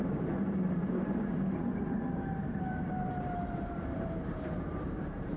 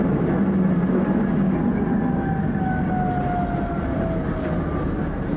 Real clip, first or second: second